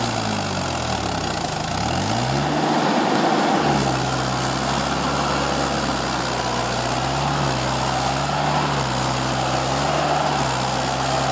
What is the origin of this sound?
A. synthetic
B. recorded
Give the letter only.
B